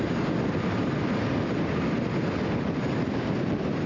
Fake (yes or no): no